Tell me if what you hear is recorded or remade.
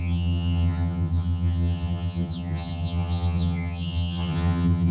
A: remade